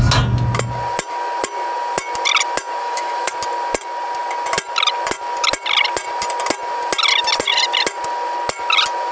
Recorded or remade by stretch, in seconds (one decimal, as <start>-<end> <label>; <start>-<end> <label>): 0.0-2.8 recorded; 2.8-3.3 remade; 3.3-9.1 recorded